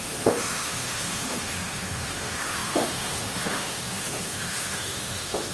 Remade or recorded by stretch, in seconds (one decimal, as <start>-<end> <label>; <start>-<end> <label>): 0.0-5.5 remade